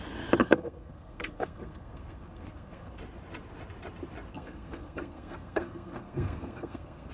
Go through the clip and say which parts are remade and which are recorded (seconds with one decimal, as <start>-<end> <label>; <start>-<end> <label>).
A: 0.0-0.4 recorded; 0.4-3.0 remade; 3.0-4.3 recorded; 4.3-7.1 remade